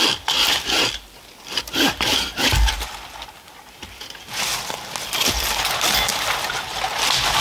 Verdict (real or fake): real